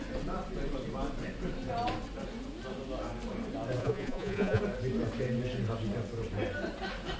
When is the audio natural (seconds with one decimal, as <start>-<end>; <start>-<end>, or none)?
0.0-3.8; 4.6-7.2